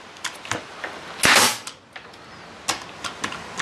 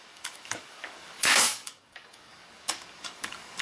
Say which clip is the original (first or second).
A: first